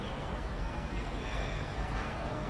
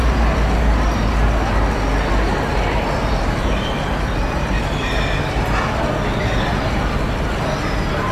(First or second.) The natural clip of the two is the second